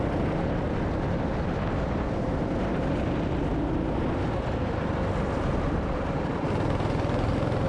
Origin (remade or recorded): recorded